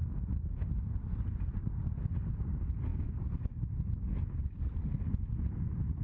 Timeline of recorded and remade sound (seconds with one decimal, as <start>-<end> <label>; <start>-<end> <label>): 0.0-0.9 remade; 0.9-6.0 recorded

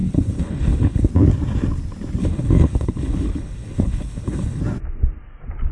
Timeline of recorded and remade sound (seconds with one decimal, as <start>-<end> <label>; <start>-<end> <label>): 0.0-1.1 remade; 1.1-2.2 recorded; 2.2-4.6 remade; 4.6-5.7 recorded

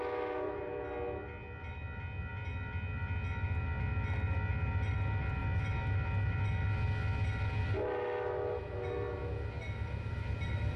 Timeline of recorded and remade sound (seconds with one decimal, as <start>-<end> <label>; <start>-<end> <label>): 0.0-10.8 recorded

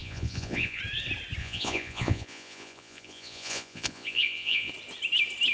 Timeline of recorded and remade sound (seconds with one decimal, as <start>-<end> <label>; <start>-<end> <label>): 0.0-0.8 remade; 0.8-1.4 recorded; 1.4-4.7 remade; 4.7-5.5 recorded